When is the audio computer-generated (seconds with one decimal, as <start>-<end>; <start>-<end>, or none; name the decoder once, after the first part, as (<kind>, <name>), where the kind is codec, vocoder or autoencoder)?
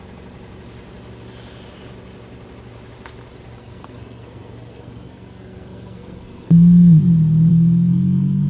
3.6-7.0 (codec, SNAC); 7.5-8.5